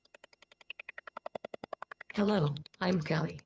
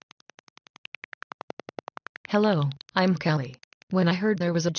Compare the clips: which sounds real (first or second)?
second